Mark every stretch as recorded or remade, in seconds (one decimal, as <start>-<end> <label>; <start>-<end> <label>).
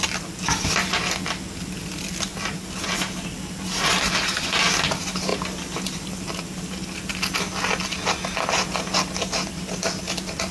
0.0-10.5 recorded